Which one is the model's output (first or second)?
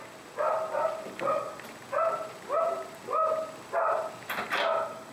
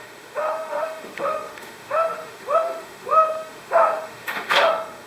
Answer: second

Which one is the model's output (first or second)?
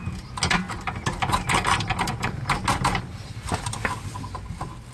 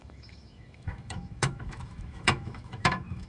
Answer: second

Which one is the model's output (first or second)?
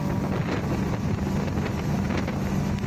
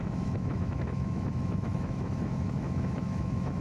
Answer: second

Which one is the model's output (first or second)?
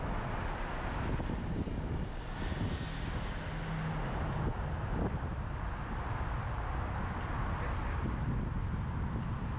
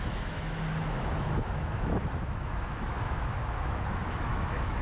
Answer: second